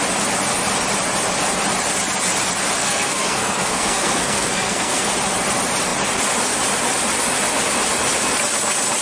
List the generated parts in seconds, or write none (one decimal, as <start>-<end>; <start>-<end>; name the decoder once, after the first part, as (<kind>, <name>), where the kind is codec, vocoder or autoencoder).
2.8-5.1 (codec, SNAC)